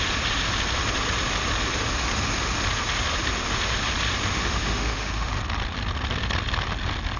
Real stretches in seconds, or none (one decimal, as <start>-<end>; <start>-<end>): 0.0-4.3; 5.3-7.2